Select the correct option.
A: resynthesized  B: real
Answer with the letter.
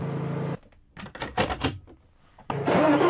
B